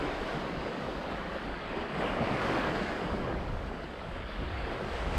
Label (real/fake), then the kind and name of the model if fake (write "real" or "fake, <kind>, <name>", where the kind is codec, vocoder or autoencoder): fake, codec, DAC